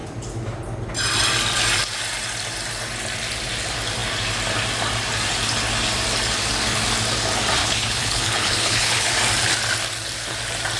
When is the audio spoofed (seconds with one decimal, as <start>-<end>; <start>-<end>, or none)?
7.6-9.1